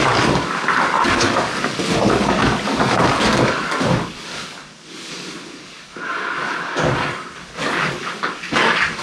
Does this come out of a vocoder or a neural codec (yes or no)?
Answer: yes